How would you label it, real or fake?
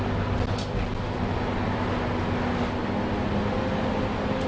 real